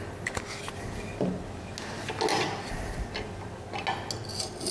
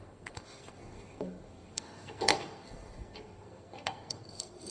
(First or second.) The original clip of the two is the first